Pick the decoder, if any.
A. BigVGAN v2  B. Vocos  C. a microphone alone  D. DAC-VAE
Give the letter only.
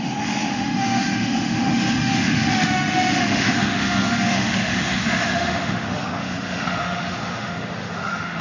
D